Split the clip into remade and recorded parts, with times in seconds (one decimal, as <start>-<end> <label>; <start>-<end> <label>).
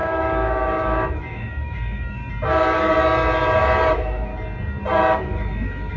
0.0-2.2 remade; 2.2-3.9 recorded; 3.9-4.3 remade; 4.3-5.2 recorded; 5.2-6.0 remade